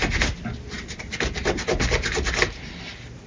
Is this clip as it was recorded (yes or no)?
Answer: yes